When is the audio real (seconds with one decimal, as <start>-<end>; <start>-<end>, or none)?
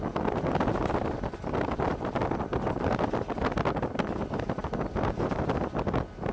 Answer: 0.0-6.3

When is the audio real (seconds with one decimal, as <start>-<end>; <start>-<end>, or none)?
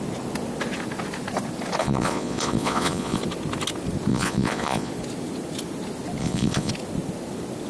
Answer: 0.0-1.8; 3.2-4.1; 4.9-6.2; 6.7-7.7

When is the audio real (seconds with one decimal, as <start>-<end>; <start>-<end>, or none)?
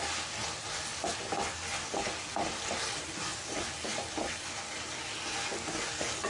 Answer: 0.0-0.9; 1.5-3.3; 4.6-6.3